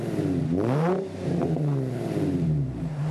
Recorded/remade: remade